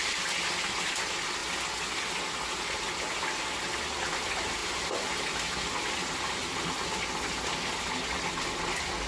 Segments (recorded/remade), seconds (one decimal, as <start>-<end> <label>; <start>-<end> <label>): 0.0-9.1 recorded